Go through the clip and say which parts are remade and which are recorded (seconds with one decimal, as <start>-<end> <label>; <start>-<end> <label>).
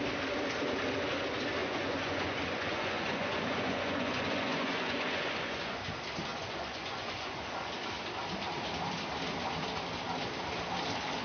0.0-1.6 recorded; 1.6-5.8 remade; 5.8-6.3 recorded; 6.3-7.7 remade; 7.7-11.2 recorded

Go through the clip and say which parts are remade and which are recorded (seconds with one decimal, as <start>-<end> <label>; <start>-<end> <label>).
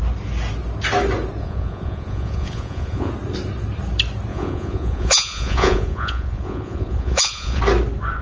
0.0-1.4 recorded; 1.4-3.1 remade; 3.1-4.3 recorded; 4.3-7.6 remade; 7.6-8.2 recorded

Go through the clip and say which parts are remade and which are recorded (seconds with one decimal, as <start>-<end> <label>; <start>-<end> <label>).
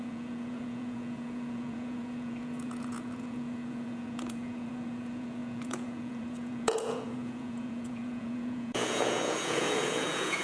0.0-10.4 remade